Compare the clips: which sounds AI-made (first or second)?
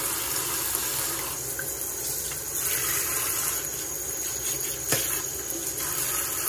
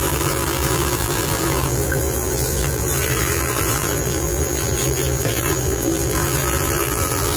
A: second